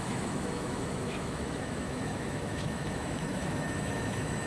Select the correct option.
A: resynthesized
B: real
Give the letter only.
A